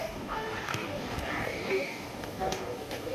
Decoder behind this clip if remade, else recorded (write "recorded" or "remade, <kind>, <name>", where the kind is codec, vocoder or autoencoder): remade, codec, DAC